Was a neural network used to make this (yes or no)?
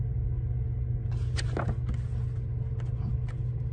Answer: no